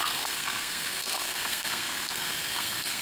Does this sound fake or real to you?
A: fake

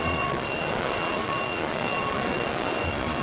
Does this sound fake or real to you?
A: fake